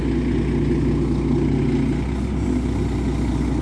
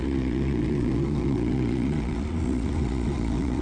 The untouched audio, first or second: first